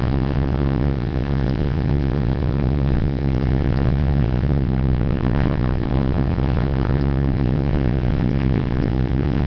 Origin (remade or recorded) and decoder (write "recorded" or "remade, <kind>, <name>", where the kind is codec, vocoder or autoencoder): remade, vocoder, WaveNeXt